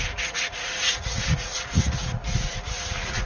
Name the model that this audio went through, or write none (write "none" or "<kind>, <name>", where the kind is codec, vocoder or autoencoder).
vocoder, Vocos